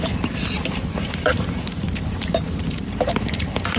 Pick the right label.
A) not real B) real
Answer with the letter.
B